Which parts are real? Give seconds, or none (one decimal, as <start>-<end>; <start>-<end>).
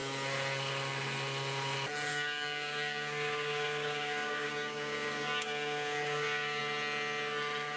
0.0-2.1; 6.6-7.8